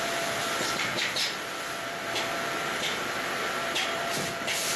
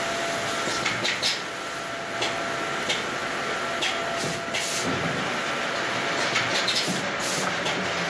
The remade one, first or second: first